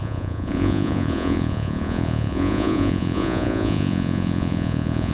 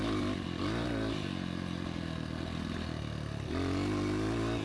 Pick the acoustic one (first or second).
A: second